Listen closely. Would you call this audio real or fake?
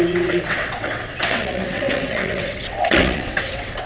fake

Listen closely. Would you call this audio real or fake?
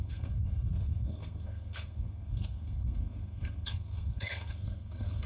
fake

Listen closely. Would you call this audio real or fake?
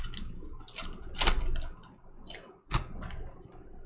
real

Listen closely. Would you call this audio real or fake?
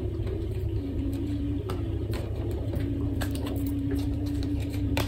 fake